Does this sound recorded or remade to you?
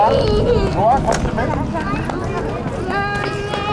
recorded